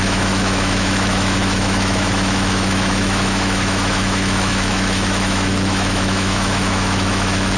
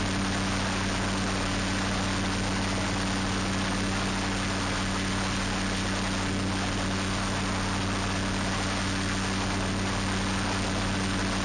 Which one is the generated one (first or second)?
first